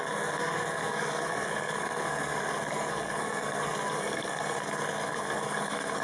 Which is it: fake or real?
fake